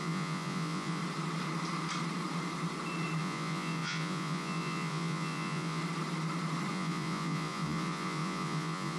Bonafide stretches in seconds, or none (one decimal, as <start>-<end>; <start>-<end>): 1.0-3.2; 5.8-6.7